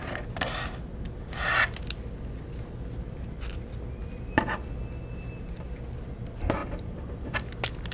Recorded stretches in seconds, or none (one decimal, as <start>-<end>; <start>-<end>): 0.0-7.9